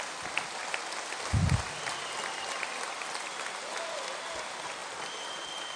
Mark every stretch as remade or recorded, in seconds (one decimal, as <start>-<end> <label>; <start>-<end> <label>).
0.0-5.8 recorded